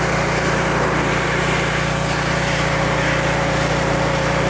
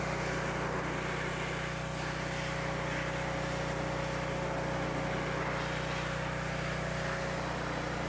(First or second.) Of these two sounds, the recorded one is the second